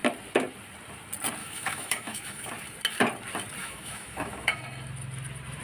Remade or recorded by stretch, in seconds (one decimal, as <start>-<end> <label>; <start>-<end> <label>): 0.0-1.4 recorded; 1.4-2.5 remade; 2.5-3.6 recorded; 3.6-4.6 remade; 4.6-5.6 recorded